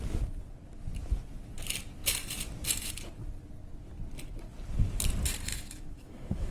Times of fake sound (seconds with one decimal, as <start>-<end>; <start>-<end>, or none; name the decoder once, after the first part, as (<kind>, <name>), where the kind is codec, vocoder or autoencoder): 5.5-6.5 (autoencoder, DAC-VAE)